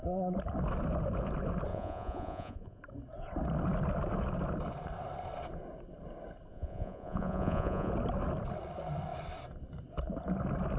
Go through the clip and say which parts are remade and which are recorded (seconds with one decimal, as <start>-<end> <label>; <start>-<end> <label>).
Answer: 0.0-1.7 recorded; 1.7-2.8 remade; 2.8-6.5 recorded; 6.5-7.9 remade; 7.9-10.8 recorded